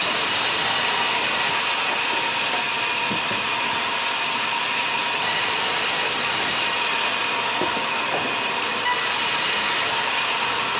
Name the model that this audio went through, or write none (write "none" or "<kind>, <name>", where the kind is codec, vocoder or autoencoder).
none